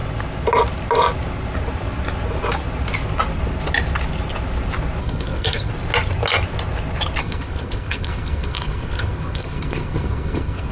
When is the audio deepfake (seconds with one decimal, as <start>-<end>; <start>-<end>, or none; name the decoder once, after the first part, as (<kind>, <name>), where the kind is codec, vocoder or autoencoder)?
5.0-5.7 (codec, SNAC); 7.2-10.7